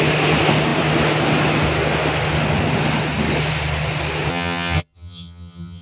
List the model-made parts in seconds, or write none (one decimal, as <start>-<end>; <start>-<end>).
4.3-5.8